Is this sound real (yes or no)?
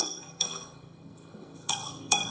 no